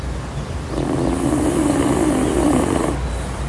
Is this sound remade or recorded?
recorded